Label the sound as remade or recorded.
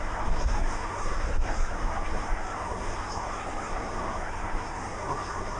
remade